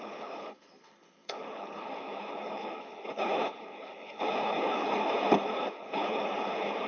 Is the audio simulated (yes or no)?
yes